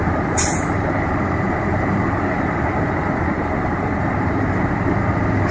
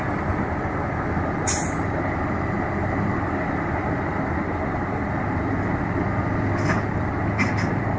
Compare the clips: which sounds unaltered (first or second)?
second